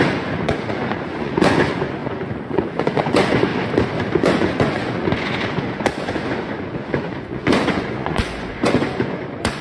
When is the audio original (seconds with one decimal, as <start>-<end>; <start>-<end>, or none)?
3.5-4.2

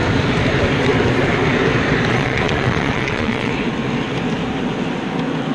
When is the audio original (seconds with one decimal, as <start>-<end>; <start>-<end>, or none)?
0.0-2.1; 3.5-5.5

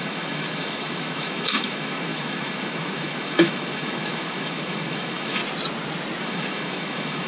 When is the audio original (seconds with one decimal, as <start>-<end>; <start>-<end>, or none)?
5.4-6.2

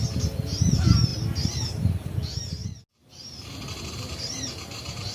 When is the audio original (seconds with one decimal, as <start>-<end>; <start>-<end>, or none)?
1.1-1.7; 2.6-3.8

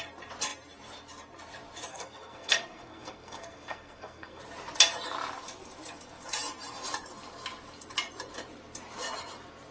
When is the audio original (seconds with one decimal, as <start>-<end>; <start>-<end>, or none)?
0.0-1.9; 4.4-9.7

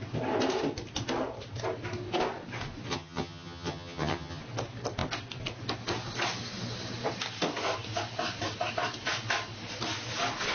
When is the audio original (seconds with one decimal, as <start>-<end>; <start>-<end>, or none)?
0.0-2.9; 4.4-10.5

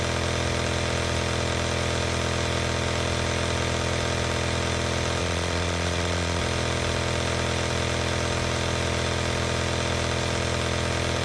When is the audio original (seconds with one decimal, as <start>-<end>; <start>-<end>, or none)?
0.0-5.2; 6.4-11.2